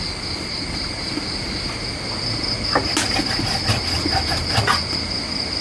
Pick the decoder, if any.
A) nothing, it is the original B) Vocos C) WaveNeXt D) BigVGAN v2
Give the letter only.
A